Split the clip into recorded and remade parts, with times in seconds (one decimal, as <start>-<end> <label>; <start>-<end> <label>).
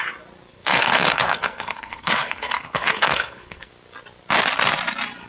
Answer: 0.0-0.5 recorded; 0.5-3.7 remade; 3.7-5.3 recorded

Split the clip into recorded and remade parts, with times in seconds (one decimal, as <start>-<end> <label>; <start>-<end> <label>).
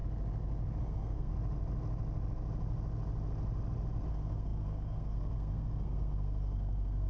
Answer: 0.0-0.8 recorded; 0.8-1.3 remade; 1.3-4.1 recorded; 4.1-7.1 remade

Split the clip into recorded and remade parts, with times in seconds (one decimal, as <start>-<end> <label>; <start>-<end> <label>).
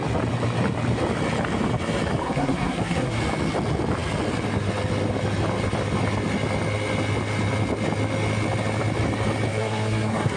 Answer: 0.0-2.2 recorded; 2.2-3.2 remade; 3.2-9.5 recorded; 9.5-10.4 remade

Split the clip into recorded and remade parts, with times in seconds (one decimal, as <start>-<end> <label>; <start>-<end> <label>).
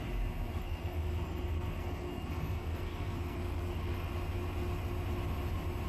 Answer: 0.0-0.6 recorded; 0.6-4.1 remade; 4.1-5.9 recorded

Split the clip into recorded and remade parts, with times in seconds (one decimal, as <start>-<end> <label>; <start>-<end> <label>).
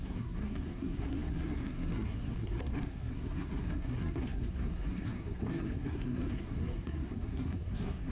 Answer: 0.0-8.1 remade